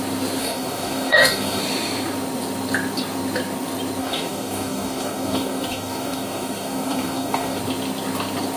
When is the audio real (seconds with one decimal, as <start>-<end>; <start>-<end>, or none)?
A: 0.0-0.4; 1.6-4.0; 7.6-8.6